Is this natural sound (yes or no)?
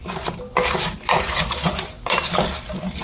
yes